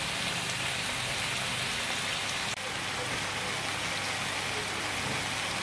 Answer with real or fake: real